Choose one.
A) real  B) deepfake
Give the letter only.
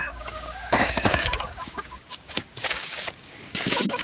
B